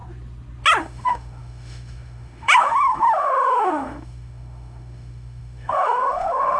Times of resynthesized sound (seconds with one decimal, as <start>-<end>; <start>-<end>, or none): 0.8-6.6